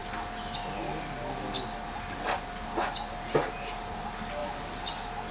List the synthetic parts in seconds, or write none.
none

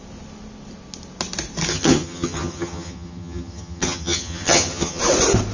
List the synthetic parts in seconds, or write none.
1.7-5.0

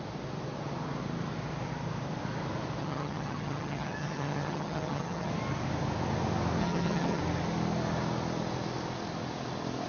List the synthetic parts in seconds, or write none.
2.8-5.3; 6.6-7.2

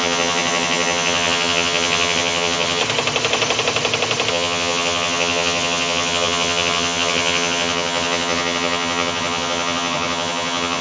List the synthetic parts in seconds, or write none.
0.0-2.8; 4.3-10.8

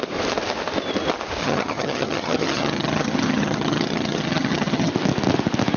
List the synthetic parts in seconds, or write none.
1.4-4.9